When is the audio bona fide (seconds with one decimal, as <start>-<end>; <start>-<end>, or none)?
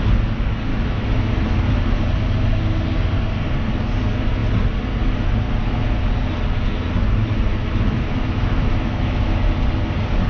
0.0-0.7; 1.3-7.5; 9.2-10.3